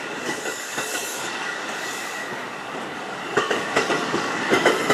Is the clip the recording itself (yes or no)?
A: no